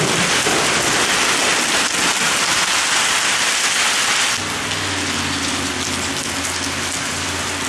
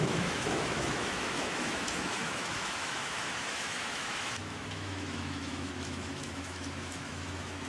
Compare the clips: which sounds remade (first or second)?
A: second